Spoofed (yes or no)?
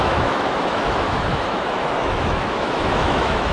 yes